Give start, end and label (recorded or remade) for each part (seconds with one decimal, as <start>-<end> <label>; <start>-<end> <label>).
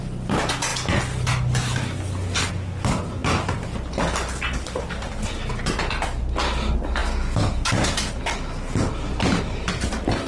0.0-10.3 recorded